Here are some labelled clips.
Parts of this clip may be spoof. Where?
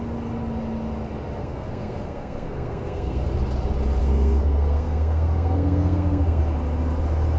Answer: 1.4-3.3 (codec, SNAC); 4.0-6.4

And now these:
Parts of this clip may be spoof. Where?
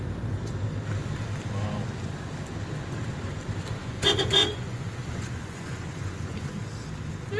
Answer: 3.8-6.6 (vocoder, Vocos)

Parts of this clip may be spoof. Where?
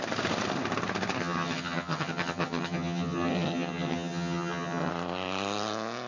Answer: 1.2-4.9 (vocoder, HiFi-GAN)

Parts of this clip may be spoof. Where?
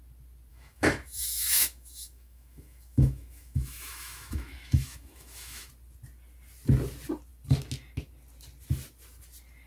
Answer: 0.5-5.7 (autoencoder, DAC-VAE)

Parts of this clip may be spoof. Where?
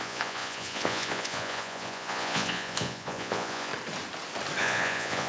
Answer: 0.0-3.7 (vocoder, Vocos); 4.6-5.3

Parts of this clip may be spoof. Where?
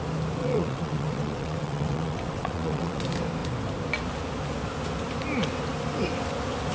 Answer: 0.4-3.0 (vocoder, WaveNeXt)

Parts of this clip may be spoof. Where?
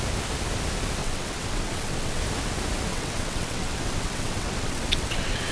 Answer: 1.0-2.2 (vocoder, WaveNeXt); 2.9-5.5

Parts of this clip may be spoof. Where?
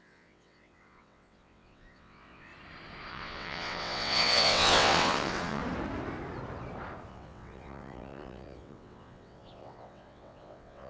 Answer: 0.0-2.5 (vocoder, WaveNeXt); 3.1-5.6; 7.1-10.9